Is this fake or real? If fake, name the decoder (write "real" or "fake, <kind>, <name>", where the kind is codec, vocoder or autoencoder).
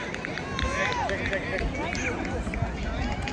real